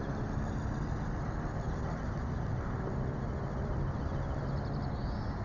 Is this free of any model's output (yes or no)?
yes